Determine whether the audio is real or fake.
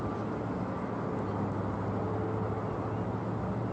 real